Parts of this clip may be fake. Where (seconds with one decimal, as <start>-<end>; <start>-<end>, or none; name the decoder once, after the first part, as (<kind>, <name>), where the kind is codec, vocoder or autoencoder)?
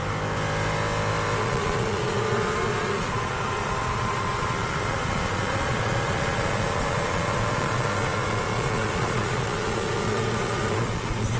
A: 1.4-11.4 (vocoder, Vocos)